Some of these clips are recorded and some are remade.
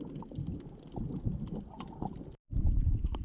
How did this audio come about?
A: recorded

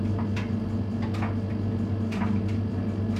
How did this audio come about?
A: recorded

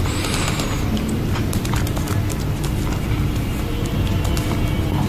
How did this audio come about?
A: recorded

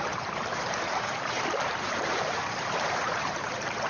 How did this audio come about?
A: remade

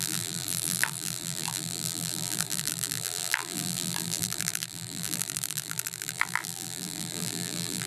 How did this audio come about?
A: remade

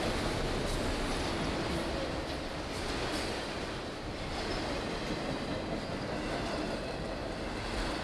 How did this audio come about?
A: recorded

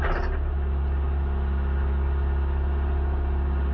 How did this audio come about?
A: recorded